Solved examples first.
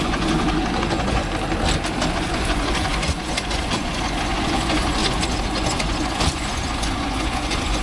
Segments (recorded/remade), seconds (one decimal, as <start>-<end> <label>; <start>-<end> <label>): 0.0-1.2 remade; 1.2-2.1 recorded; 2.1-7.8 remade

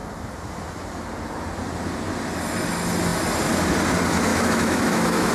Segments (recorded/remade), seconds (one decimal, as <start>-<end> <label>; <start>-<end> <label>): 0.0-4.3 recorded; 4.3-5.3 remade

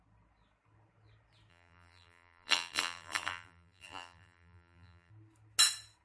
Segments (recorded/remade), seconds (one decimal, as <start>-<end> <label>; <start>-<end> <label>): 0.0-1.5 recorded; 1.5-5.1 remade; 5.1-6.0 recorded